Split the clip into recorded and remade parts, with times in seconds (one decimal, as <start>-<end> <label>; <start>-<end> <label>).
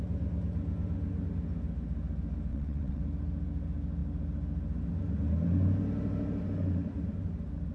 0.0-2.5 recorded; 2.5-3.0 remade; 3.0-7.7 recorded